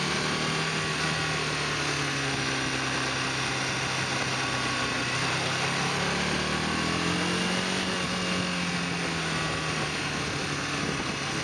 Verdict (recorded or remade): recorded